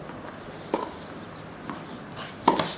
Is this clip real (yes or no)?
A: yes